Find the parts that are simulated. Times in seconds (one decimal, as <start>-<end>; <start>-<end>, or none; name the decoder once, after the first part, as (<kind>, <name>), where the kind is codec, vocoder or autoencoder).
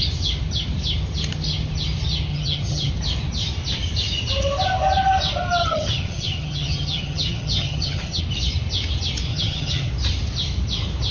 2.3-2.9 (vocoder, HiFi-GAN); 5.6-8.2; 9.3-9.9